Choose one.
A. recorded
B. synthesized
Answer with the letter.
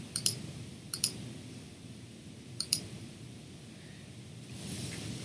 B